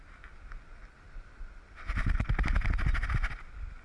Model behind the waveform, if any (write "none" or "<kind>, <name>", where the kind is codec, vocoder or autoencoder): none